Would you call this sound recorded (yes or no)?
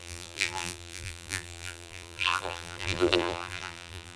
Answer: no